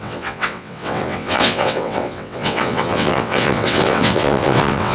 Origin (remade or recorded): remade